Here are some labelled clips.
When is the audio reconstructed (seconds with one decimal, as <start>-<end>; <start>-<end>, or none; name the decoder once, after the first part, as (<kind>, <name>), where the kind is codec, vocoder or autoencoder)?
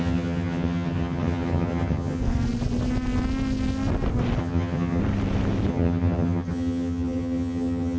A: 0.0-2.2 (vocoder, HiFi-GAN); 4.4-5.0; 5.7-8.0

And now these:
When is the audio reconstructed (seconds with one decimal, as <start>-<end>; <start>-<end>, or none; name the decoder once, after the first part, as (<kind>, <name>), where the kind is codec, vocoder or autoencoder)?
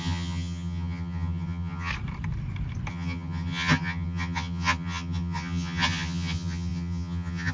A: 0.0-1.9 (vocoder, HiFi-GAN); 2.9-7.5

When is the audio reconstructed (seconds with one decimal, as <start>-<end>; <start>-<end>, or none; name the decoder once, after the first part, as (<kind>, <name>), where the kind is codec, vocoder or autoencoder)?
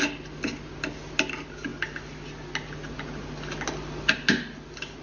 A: none